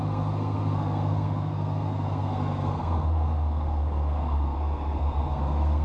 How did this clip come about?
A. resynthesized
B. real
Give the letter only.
A